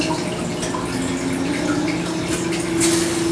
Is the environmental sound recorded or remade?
recorded